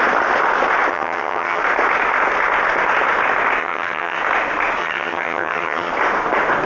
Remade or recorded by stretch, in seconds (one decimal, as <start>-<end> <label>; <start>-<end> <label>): 0.0-0.9 recorded; 0.9-1.6 remade; 1.6-3.6 recorded; 3.6-4.2 remade; 4.2-4.8 recorded; 4.8-5.9 remade; 5.9-6.7 recorded